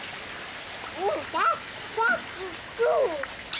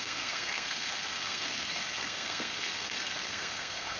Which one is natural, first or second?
first